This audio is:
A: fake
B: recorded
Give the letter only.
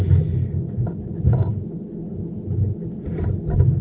B